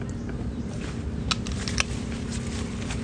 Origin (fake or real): real